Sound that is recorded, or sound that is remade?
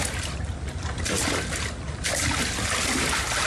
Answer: recorded